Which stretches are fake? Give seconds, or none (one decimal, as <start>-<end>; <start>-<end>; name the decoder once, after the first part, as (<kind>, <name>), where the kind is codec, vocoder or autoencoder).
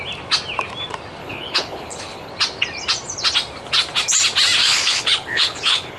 1.2-2.3 (codec, HILCodec); 4.6-6.0